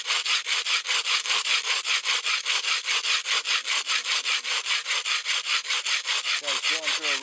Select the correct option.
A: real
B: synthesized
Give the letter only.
A